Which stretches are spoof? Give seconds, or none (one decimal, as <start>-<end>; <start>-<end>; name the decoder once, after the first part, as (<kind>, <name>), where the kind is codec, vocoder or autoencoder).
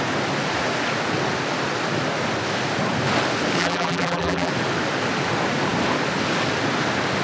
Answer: 3.6-4.5 (vocoder, BigVGAN v2)